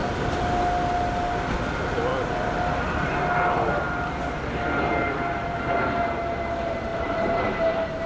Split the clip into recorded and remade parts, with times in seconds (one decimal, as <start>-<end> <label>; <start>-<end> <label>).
0.0-6.9 recorded; 6.9-8.1 remade